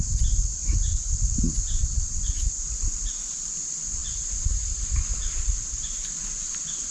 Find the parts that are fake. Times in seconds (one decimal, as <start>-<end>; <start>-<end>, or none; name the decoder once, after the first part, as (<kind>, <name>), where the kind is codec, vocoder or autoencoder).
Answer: none